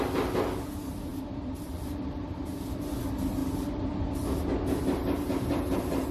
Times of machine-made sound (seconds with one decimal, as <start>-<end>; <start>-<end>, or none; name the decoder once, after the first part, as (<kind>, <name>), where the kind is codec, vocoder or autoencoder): 1.1-2.6 (vocoder, BigVGAN v2)